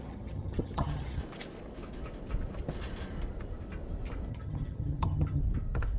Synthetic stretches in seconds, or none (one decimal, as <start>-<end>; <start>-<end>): 0.0-1.2; 4.3-5.4